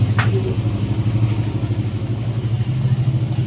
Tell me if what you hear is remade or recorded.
recorded